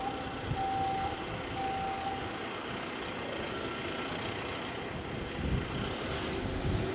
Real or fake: real